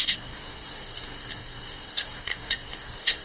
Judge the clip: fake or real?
fake